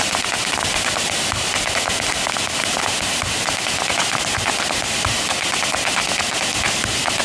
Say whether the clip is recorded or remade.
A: recorded